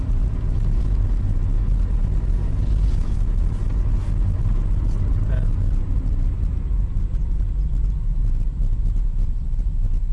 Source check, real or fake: real